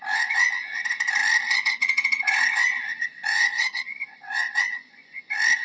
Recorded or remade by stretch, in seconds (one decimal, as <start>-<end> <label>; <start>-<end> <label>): 0.0-5.6 remade